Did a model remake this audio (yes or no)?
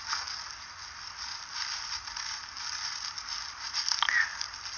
no